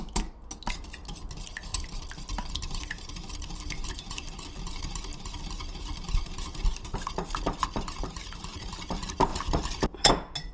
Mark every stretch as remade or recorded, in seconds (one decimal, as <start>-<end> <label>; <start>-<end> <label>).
0.0-9.3 recorded; 9.3-10.1 remade; 10.1-10.5 recorded